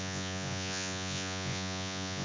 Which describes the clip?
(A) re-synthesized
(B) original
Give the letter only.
A